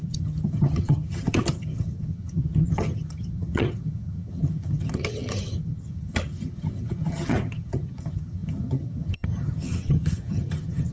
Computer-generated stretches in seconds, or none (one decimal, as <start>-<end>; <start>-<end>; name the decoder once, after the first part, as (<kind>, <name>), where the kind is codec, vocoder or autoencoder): 0.0-10.9 (vocoder, HiFi-GAN)